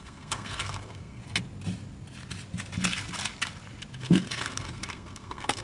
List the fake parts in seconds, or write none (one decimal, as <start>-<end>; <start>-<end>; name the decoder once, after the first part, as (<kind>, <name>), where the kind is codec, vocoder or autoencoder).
0.0-1.2 (codec, SNAC); 4.0-5.6

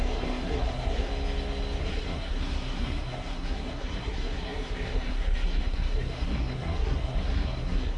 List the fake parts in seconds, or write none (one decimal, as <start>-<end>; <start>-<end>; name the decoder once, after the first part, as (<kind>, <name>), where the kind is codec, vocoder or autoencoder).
0.0-1.1 (codec, SNAC); 1.8-8.0

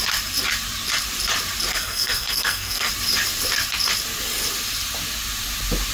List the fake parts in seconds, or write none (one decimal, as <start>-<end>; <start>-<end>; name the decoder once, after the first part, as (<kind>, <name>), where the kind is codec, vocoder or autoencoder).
1.7-2.9 (codec, SNAC)

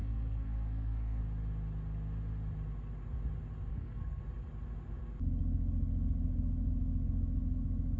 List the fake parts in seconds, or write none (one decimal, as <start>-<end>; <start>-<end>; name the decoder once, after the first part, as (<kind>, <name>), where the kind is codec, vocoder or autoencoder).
0.0-1.2 (codec, SNAC); 3.7-4.2

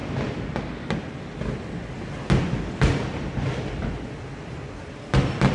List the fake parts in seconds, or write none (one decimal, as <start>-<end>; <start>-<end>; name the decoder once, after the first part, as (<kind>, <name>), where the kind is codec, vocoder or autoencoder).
none

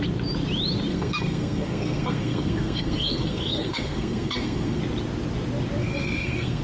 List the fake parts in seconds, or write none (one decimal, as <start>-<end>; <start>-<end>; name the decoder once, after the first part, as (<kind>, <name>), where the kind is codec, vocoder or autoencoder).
0.9-4.8 (codec, SNAC); 5.8-6.6

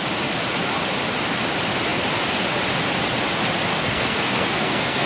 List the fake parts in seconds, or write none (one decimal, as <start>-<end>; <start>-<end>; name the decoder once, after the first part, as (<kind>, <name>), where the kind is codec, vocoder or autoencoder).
3.7-5.1 (codec, SNAC)

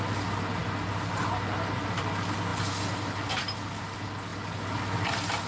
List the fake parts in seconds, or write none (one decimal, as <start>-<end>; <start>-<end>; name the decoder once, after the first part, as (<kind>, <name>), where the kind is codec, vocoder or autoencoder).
none